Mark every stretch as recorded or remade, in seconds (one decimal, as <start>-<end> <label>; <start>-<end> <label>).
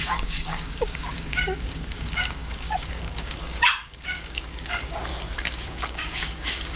0.0-6.8 remade